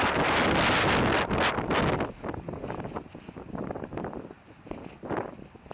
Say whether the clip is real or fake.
real